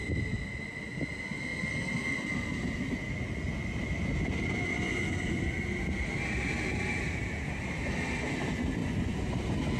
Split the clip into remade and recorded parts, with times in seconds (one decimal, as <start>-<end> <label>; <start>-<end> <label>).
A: 0.0-4.7 recorded; 4.7-5.4 remade; 5.4-8.8 recorded; 8.8-9.3 remade; 9.3-9.8 recorded